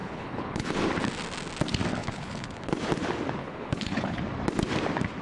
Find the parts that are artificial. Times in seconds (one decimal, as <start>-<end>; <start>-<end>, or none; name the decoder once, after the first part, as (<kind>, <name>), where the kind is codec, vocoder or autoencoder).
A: 0.0-0.7 (codec, HILCodec); 2.0-2.7; 3.4-4.2

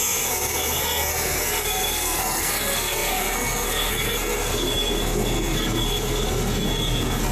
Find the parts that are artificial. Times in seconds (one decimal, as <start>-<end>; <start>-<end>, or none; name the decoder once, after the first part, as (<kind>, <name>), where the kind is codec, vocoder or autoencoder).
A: 0.0-7.3 (codec, SNAC)